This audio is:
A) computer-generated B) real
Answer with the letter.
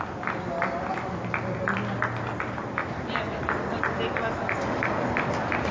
B